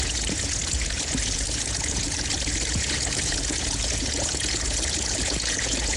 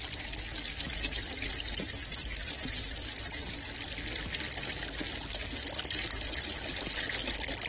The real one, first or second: second